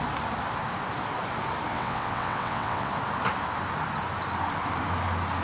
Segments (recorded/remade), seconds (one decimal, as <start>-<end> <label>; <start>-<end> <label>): 0.0-1.7 recorded; 1.7-2.9 remade; 2.9-5.4 recorded

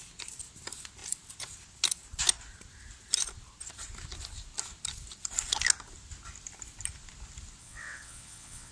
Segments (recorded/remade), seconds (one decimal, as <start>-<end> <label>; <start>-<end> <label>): 0.0-7.6 recorded; 7.6-8.7 remade

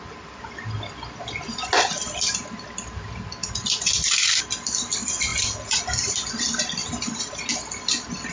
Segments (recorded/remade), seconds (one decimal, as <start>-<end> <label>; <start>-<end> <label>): 0.0-8.3 recorded

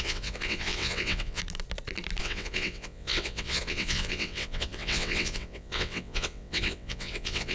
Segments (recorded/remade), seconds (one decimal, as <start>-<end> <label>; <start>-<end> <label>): 0.0-1.4 remade; 1.4-2.2 recorded; 2.2-7.5 remade

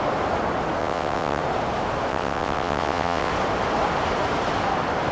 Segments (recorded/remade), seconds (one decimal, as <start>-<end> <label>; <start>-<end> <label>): 0.0-0.8 recorded; 0.8-1.4 remade; 1.4-2.1 recorded; 2.1-3.3 remade; 3.3-5.1 recorded

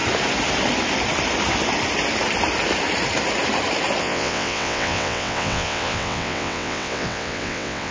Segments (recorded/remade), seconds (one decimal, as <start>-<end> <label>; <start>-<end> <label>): 0.0-4.0 recorded; 4.0-7.9 remade